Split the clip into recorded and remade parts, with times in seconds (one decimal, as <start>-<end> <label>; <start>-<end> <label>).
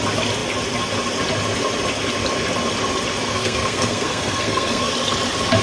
0.0-3.3 recorded; 3.3-4.9 remade; 4.9-5.6 recorded